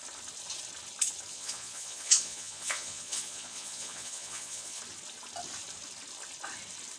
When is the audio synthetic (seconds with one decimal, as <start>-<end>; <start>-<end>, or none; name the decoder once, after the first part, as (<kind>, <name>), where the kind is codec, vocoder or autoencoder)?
1.3-4.8 (vocoder, Vocos)